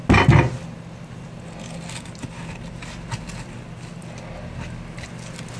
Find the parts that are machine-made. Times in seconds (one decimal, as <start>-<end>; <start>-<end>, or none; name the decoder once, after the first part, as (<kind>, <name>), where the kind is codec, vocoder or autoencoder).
none